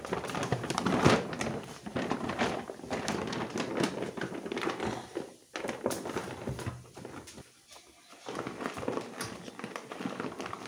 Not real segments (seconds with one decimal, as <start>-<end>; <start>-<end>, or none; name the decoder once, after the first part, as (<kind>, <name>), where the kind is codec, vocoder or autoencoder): 0.5-3.2 (vocoder, BigVGAN v2)